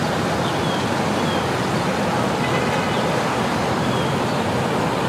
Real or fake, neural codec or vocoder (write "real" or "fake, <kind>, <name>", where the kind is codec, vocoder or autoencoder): real